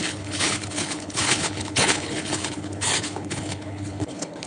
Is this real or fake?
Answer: fake